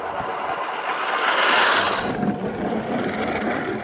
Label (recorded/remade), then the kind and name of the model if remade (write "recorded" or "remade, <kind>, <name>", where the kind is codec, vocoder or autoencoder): recorded